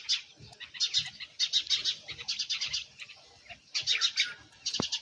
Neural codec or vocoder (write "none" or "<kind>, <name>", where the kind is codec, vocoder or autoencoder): none